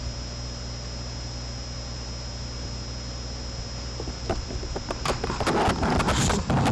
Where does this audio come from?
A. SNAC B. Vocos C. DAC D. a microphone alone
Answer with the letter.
D